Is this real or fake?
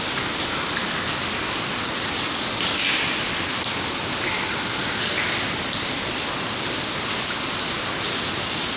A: real